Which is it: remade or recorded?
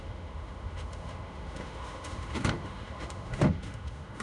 remade